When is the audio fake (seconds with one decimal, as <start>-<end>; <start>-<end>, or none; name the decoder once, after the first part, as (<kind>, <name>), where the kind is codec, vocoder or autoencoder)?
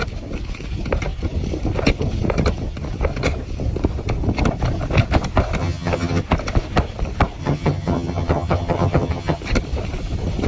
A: 5.6-6.2 (vocoder, HiFi-GAN); 7.4-9.4